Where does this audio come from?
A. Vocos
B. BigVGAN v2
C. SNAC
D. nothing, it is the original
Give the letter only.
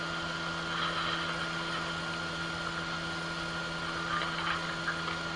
D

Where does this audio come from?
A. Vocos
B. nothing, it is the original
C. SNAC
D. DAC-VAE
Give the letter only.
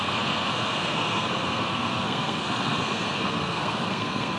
C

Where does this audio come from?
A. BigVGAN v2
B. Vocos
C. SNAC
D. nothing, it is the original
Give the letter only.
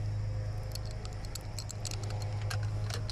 D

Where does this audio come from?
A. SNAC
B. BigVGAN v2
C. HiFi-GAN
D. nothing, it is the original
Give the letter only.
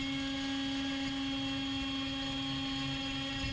D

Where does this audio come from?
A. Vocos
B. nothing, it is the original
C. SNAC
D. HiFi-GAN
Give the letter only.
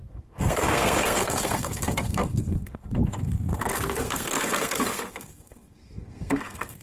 C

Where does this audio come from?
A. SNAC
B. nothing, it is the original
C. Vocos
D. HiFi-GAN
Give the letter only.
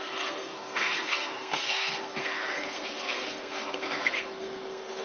A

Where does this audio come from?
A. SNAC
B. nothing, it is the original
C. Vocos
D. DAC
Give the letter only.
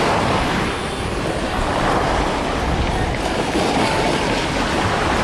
B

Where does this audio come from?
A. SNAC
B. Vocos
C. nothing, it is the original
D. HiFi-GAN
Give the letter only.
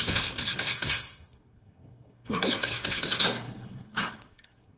A